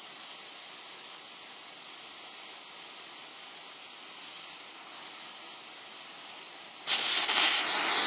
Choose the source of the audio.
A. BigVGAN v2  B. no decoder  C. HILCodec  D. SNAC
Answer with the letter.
B